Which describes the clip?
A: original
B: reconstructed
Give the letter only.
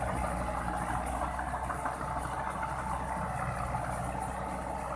A